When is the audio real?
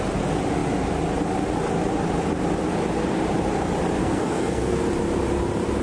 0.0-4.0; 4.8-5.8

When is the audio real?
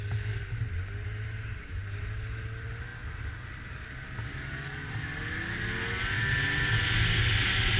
0.0-7.8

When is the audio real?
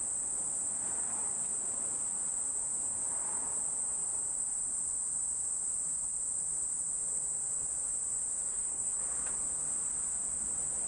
0.0-8.5; 9.0-10.9